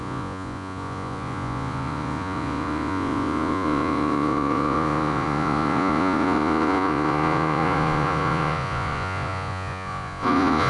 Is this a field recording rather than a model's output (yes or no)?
no